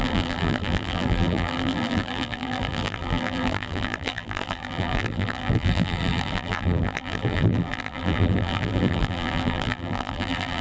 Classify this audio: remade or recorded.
remade